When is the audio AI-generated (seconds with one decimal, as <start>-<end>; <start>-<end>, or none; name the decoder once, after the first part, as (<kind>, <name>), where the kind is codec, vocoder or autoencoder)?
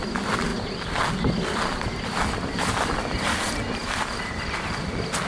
none